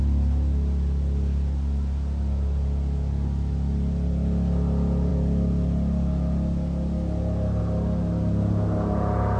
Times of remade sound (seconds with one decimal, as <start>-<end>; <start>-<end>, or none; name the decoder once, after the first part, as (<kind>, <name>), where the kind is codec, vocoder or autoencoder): none